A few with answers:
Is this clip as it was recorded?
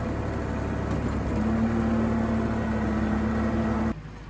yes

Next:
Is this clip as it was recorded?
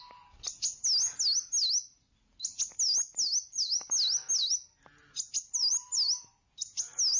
yes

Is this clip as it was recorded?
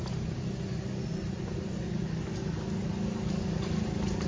yes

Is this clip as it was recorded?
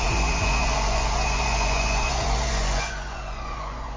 no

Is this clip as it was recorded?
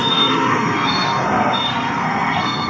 no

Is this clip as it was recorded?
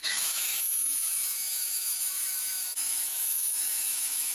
no